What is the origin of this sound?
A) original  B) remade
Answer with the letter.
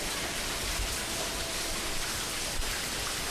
B